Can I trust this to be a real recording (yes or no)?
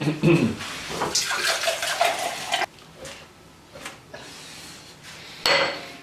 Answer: yes